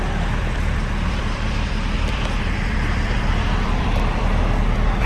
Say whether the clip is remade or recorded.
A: remade